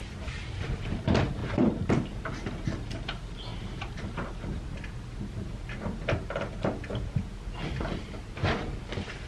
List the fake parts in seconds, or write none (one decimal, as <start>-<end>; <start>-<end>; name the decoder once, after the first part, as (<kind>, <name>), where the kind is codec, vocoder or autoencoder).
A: 1.4-1.9 (vocoder, BigVGAN v2); 3.5-4.3